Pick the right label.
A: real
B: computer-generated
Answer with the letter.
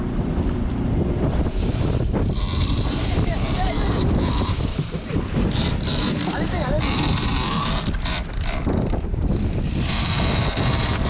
B